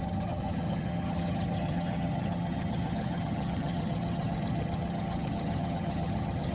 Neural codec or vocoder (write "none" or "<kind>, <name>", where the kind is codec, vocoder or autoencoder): vocoder, HiFi-GAN